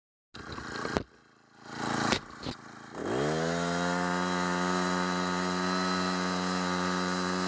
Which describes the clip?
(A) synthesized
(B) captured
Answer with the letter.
B